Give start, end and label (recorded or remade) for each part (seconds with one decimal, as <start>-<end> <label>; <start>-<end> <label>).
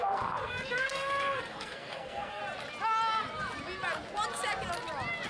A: 0.0-2.4 remade; 2.4-5.3 recorded